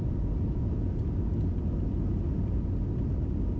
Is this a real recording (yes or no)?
yes